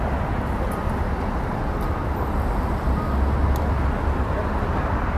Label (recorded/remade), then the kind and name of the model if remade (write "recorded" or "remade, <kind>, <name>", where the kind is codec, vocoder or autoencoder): recorded